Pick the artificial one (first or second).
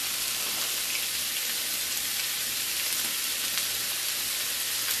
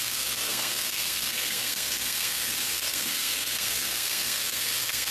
second